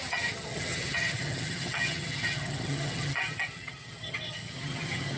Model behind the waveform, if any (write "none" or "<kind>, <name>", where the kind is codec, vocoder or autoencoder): vocoder, HiFi-GAN